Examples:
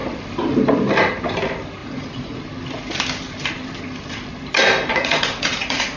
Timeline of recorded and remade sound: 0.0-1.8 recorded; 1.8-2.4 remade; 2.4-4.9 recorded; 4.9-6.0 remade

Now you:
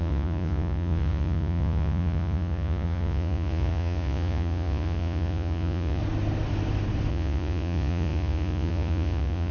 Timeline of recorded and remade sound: 0.0-6.0 remade; 6.0-7.1 recorded; 7.1-9.5 remade

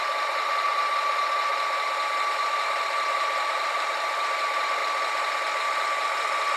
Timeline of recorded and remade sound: 0.0-1.5 remade; 1.5-2.3 recorded; 2.3-4.8 remade; 4.8-5.6 recorded; 5.6-6.6 remade

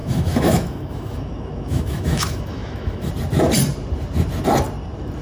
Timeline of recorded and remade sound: 0.0-3.1 remade; 3.1-5.2 recorded